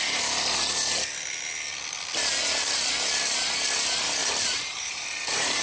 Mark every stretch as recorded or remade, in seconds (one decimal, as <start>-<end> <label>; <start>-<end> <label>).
0.0-4.2 recorded; 4.2-5.6 remade